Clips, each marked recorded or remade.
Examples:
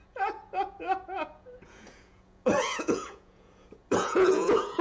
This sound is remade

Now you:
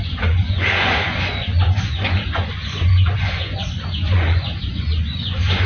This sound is remade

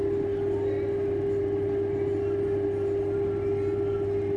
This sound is recorded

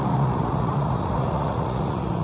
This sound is remade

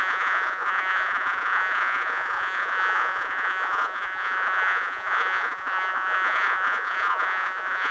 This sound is remade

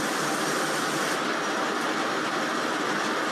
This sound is recorded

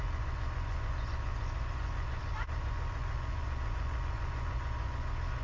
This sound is remade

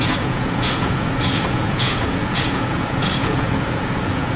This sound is remade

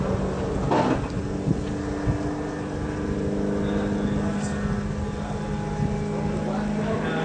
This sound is recorded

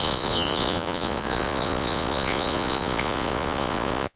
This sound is remade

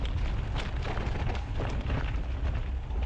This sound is recorded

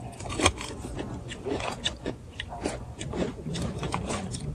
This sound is remade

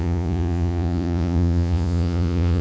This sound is remade